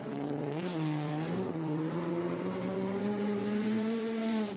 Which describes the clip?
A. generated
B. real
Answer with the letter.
A